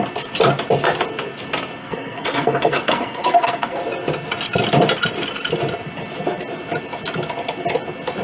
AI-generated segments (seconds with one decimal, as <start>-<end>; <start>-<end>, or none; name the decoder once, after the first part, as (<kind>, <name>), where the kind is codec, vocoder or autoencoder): 1.8-3.8 (codec, SNAC)